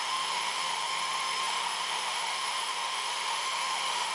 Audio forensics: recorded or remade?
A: remade